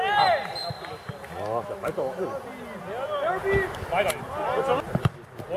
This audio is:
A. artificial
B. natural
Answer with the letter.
B